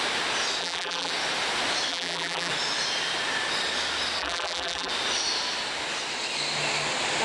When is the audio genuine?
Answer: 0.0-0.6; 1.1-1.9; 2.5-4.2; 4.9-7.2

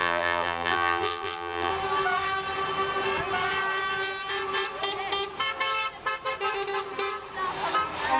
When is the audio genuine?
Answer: 1.7-8.2